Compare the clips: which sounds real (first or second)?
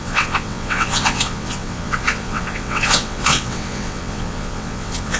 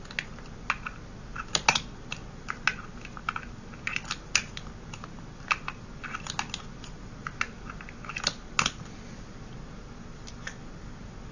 second